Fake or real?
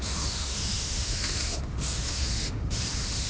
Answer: fake